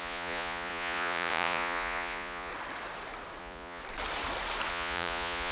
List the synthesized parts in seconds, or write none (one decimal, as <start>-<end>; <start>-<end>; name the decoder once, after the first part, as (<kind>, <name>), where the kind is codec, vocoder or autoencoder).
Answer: 0.0-2.5 (vocoder, Vocos); 3.4-3.8; 4.7-5.5